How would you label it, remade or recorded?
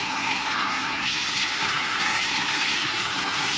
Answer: remade